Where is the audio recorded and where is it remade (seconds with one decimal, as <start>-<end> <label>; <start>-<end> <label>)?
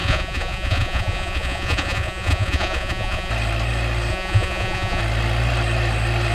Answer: 0.0-3.3 remade; 3.3-4.1 recorded; 4.1-5.0 remade; 5.0-6.3 recorded